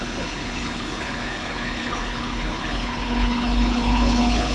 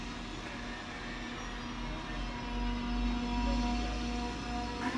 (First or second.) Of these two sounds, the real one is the second